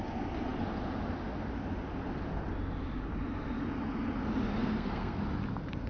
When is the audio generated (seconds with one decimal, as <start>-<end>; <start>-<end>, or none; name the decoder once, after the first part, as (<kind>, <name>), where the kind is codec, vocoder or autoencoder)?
4.6-5.2 (codec, SNAC)